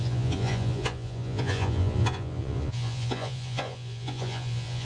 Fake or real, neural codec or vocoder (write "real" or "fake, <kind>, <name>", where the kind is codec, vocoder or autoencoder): fake, vocoder, Vocos